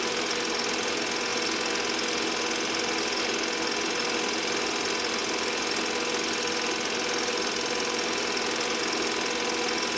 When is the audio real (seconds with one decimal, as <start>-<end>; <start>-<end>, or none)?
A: 0.0-10.0